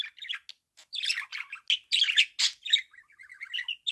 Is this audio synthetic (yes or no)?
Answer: no